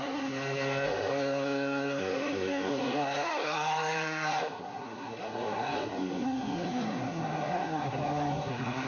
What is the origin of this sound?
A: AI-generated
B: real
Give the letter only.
A